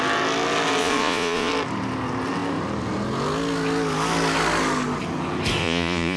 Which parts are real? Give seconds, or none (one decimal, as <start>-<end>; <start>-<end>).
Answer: 0.0-0.8; 1.5-5.6